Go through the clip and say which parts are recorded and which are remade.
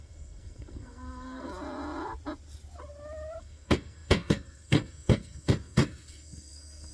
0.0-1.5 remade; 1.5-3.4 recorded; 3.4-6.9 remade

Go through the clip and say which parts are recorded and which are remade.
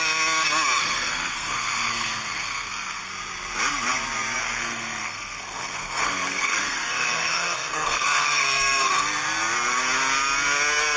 0.0-0.8 recorded; 0.8-3.1 remade; 3.1-4.4 recorded; 4.4-9.0 remade; 9.0-11.0 recorded